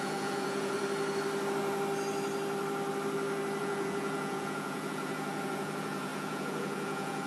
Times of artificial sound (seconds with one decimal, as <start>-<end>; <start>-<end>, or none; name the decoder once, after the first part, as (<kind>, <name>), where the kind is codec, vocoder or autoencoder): 0.0-0.8 (vocoder, Vocos); 3.6-7.3